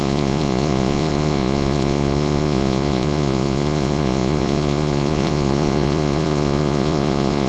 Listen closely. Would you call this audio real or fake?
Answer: fake